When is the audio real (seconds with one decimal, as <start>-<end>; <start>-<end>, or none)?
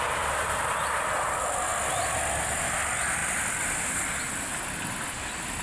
0.0-5.6